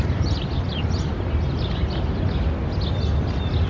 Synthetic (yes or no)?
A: no